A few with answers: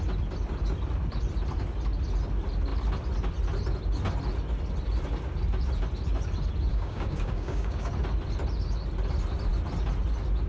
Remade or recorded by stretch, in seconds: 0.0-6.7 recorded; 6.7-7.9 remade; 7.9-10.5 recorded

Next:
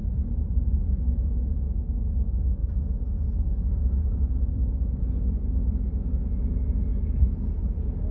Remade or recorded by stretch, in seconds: 0.0-0.6 remade; 0.6-2.6 recorded; 2.6-5.0 remade; 5.0-8.1 recorded

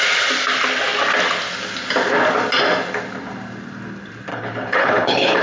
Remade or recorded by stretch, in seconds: 0.0-4.3 recorded; 4.3-5.4 remade